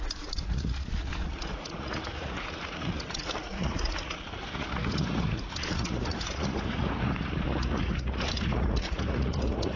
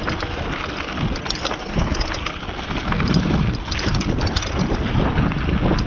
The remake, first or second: first